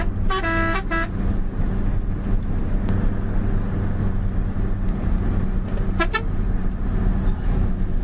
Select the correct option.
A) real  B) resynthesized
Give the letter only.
A